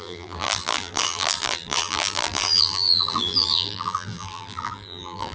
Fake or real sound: fake